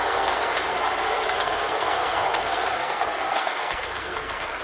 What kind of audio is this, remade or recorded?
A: remade